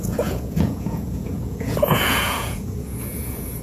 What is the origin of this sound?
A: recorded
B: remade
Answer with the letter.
B